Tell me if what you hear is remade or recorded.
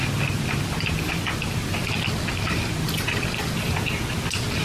recorded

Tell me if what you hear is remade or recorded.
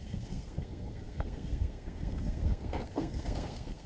remade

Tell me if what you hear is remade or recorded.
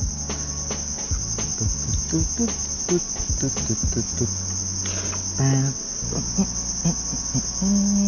recorded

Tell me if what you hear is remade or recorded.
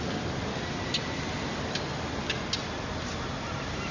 recorded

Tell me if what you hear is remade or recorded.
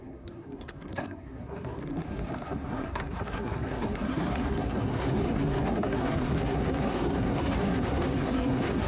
remade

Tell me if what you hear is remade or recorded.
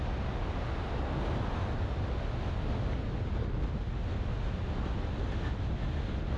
recorded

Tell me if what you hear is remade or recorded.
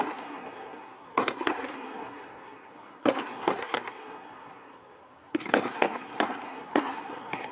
remade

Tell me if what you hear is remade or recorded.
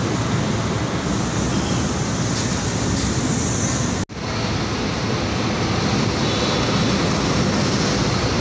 recorded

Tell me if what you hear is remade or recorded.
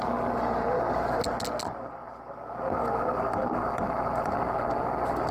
recorded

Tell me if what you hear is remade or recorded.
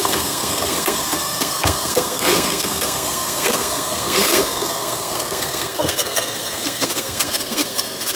remade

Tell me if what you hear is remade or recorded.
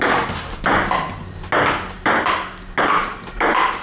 recorded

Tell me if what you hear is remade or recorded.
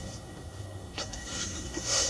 remade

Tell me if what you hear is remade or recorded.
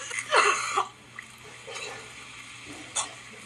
recorded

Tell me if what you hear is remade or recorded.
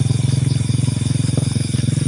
recorded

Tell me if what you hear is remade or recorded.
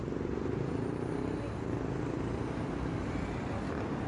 recorded